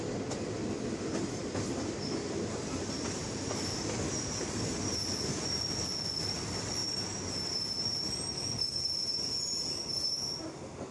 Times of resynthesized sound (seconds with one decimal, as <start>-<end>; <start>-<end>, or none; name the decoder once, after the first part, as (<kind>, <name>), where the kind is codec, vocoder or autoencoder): 6.8-10.4 (vocoder, BigVGAN v2)